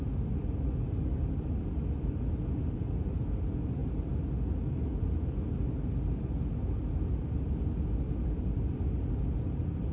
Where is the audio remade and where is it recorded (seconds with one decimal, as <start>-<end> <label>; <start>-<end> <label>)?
0.0-9.9 recorded